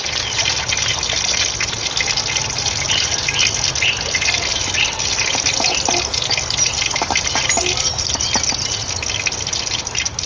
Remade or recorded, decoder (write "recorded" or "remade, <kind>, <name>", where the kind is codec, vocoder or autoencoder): recorded